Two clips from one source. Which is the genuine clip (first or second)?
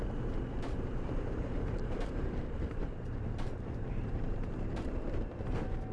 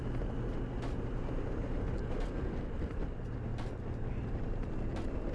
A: second